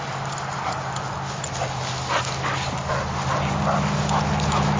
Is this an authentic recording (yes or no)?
yes